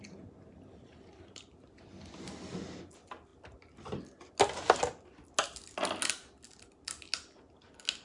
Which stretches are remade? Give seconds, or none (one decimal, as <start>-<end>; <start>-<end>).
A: none